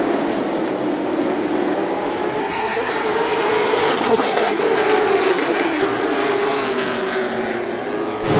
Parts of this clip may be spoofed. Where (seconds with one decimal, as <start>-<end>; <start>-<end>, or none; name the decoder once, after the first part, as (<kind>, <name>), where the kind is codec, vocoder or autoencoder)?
2.4-2.9 (codec, SNAC); 3.9-4.6; 5.3-5.8